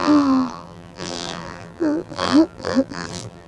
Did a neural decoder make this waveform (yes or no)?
yes